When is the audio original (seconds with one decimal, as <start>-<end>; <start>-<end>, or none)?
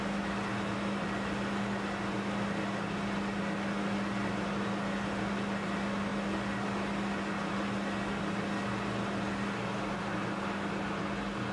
0.0-11.5